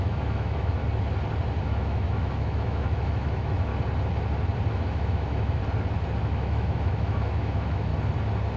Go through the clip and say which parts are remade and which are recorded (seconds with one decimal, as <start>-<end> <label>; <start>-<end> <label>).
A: 0.0-0.8 remade; 0.8-1.6 recorded; 1.6-3.7 remade; 3.7-4.7 recorded; 4.7-5.6 remade; 5.6-6.2 recorded; 6.2-7.9 remade; 7.9-8.6 recorded